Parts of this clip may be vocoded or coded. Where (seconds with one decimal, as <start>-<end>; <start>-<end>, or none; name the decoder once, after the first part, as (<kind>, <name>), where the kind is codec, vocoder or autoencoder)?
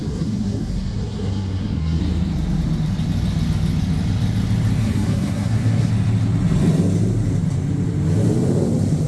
0.0-2.0 (codec, SNAC); 4.8-5.9